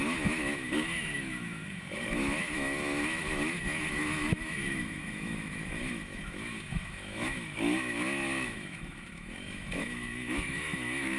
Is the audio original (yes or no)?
no